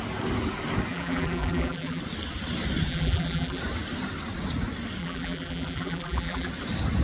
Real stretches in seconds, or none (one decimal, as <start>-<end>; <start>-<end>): 0.0-0.9; 2.0-2.9; 3.6-5.0; 6.5-7.0